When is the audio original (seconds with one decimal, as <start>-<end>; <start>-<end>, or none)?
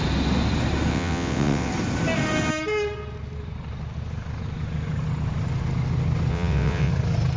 0.0-0.9; 1.7-6.3; 6.9-7.4